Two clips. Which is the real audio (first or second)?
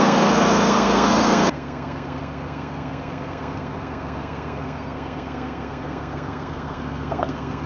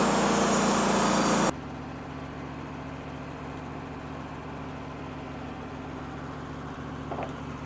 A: second